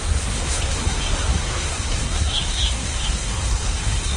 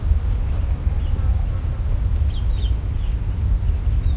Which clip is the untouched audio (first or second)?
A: second